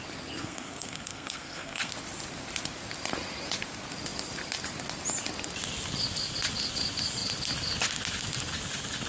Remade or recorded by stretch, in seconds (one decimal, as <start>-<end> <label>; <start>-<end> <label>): 0.0-0.4 recorded; 0.4-1.9 remade; 1.9-9.1 recorded